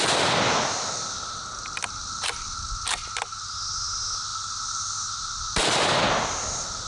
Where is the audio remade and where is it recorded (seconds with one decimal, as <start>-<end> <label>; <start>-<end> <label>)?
0.0-6.9 recorded